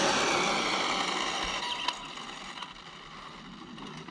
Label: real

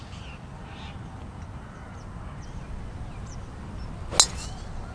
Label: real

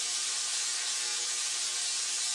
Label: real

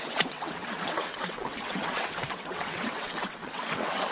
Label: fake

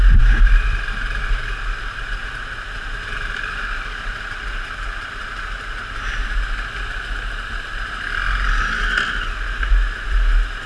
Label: real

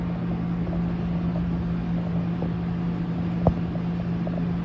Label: real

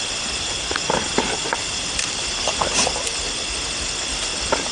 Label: real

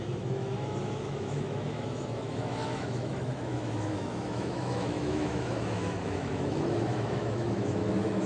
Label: fake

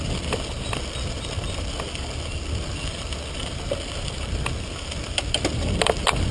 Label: real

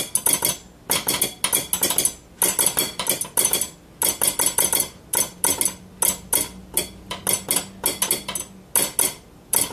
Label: real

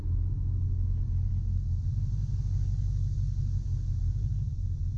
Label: real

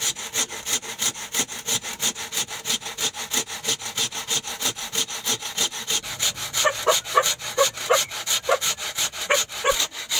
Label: real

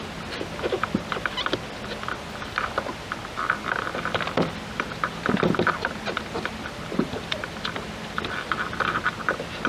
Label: real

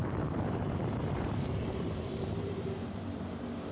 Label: fake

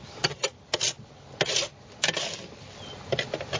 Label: real